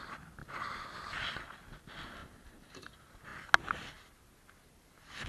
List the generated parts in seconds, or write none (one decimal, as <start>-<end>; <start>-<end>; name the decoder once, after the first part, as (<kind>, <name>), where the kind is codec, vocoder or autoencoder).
2.2-2.9 (vocoder, BigVGAN v2)